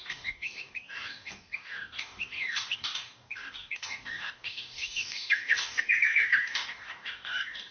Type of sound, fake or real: fake